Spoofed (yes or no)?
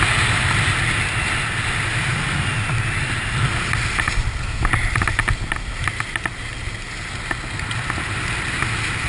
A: no